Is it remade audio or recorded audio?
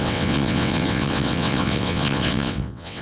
remade